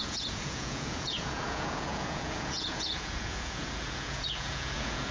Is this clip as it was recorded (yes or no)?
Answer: no